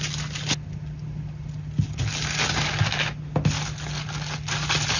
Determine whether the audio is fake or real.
real